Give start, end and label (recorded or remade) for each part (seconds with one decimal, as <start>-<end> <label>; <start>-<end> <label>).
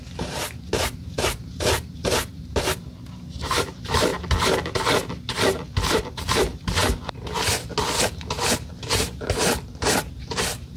0.0-4.1 remade; 4.1-6.0 recorded; 6.0-6.8 remade; 6.8-8.7 recorded; 8.7-10.8 remade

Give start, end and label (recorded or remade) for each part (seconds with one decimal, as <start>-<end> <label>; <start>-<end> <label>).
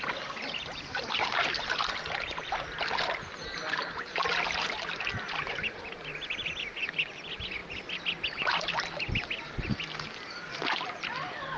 0.0-11.6 recorded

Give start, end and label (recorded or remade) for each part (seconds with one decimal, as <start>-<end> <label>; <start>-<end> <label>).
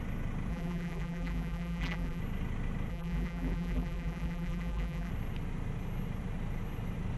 0.0-0.5 recorded; 0.5-2.2 remade; 2.2-2.9 recorded; 2.9-5.1 remade; 5.1-7.2 recorded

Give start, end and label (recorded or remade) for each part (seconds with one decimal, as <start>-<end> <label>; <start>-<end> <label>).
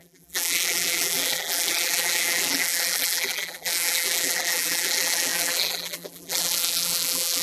0.0-7.4 remade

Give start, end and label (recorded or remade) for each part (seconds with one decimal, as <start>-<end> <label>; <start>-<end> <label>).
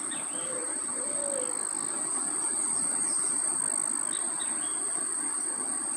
0.0-1.2 remade; 1.2-1.9 recorded; 1.9-3.6 remade; 3.6-4.2 recorded; 4.2-6.0 remade